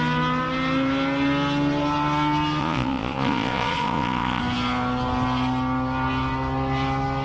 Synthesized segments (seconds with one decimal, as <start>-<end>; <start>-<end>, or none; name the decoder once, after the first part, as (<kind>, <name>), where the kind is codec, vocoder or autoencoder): 2.6-4.4 (vocoder, Vocos)